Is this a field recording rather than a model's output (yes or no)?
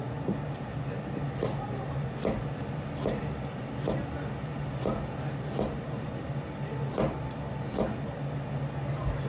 yes